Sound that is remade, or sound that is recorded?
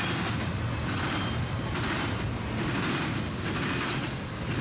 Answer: recorded